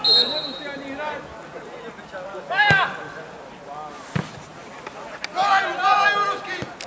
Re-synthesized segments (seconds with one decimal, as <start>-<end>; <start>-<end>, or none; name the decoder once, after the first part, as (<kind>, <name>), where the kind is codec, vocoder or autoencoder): none